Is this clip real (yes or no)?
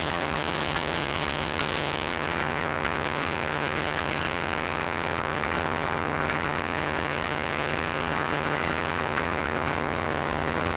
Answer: no